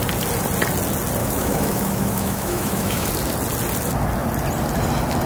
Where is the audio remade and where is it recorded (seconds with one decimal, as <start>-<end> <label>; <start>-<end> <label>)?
0.0-1.2 recorded; 1.2-3.1 remade; 3.1-5.3 recorded